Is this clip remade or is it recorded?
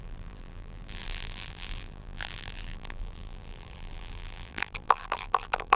remade